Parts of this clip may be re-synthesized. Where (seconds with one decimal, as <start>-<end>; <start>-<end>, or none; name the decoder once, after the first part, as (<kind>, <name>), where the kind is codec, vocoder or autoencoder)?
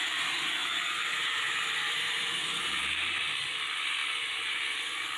0.0-5.2 (vocoder, BigVGAN v2)